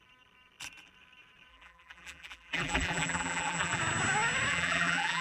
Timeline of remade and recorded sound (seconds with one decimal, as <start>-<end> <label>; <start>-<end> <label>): 0.0-1.5 recorded; 1.5-3.8 remade; 3.8-4.5 recorded; 4.5-5.2 remade